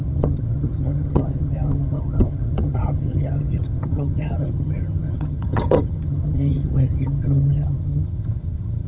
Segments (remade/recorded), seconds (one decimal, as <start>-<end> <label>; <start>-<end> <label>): 0.0-8.9 remade